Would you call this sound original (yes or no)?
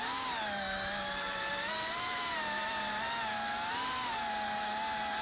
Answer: yes